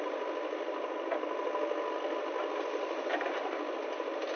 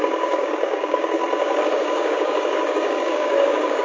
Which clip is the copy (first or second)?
second